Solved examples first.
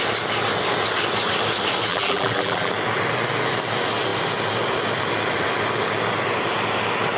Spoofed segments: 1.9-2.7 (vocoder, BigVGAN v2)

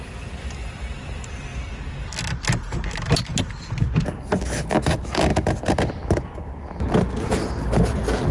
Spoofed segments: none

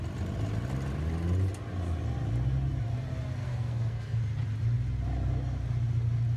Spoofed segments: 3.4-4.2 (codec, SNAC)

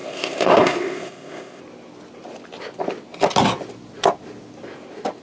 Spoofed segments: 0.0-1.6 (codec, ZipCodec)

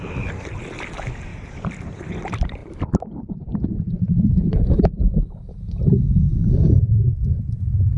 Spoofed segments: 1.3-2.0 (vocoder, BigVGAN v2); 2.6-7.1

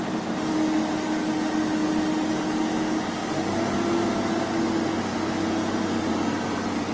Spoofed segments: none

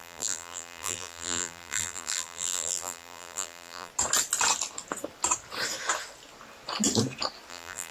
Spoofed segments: 0.0-3.9 (vocoder, BigVGAN v2); 7.5-7.9

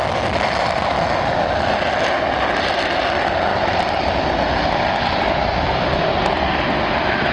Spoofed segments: 3.5-4.4 (vocoder, BigVGAN v2)